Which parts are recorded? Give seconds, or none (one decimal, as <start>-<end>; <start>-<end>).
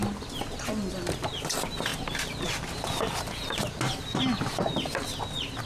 0.0-5.7